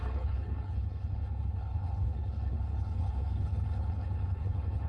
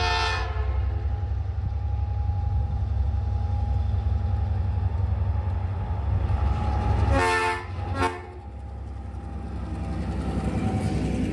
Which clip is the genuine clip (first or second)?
second